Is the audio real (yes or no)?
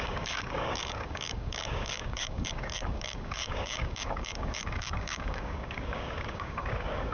no